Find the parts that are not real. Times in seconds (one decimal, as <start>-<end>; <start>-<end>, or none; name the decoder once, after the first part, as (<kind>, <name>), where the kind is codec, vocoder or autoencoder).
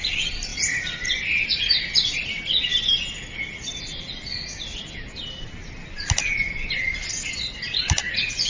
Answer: none